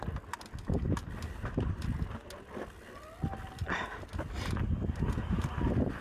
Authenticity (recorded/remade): recorded